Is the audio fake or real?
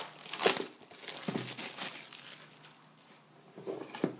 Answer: real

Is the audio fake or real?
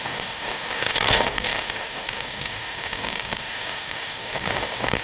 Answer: fake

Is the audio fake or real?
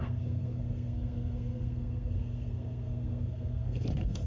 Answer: fake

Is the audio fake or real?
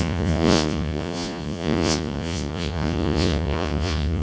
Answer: fake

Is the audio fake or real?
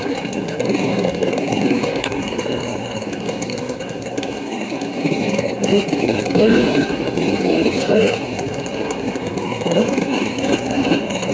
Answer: fake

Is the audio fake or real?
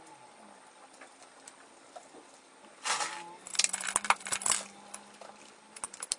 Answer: real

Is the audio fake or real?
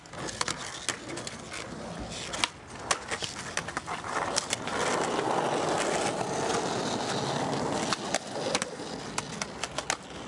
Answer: real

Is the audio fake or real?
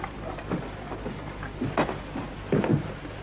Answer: real